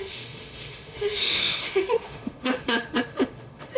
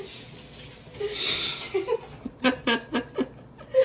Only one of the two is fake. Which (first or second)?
first